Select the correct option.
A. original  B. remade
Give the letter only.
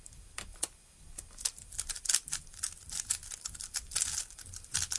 A